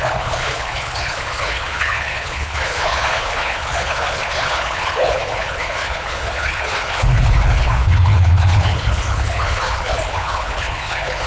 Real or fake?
fake